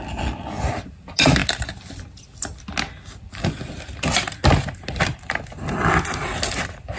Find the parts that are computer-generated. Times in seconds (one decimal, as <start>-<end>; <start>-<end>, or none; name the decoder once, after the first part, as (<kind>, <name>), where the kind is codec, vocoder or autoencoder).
none